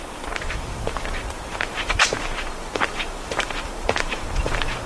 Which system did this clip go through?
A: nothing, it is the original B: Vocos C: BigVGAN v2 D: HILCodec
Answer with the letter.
C